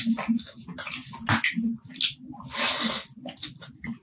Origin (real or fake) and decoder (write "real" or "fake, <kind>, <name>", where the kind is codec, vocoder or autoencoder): real